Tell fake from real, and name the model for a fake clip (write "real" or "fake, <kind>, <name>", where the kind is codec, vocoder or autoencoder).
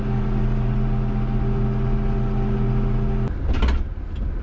real